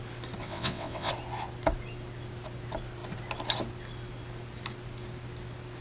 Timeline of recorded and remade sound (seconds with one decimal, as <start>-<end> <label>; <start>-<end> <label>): 0.0-0.4 recorded; 0.4-1.1 remade; 1.1-5.8 recorded